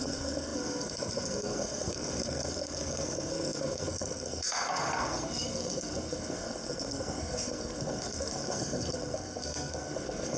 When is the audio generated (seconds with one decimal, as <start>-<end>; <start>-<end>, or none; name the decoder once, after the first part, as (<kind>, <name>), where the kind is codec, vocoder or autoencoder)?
0.0-10.4 (codec, SNAC)